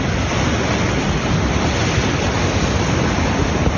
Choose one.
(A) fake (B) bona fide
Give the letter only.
B